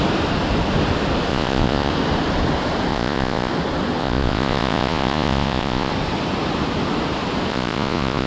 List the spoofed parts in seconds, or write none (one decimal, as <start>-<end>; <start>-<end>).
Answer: 1.3-1.9; 2.9-3.5; 4.0-5.9; 7.5-8.3